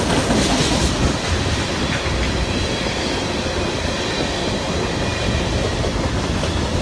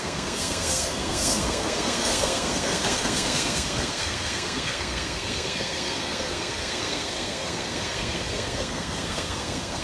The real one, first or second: first